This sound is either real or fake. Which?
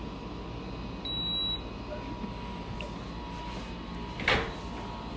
real